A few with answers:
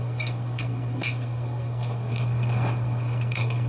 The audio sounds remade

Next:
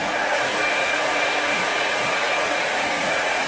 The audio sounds remade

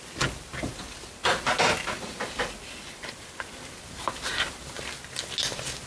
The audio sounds recorded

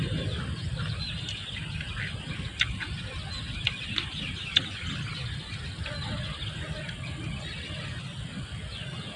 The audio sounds recorded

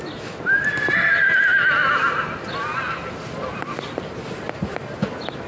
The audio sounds recorded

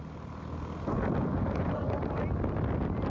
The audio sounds recorded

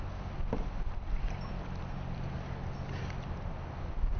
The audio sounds recorded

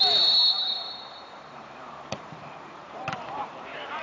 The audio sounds remade